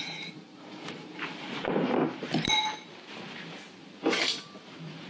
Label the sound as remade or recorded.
remade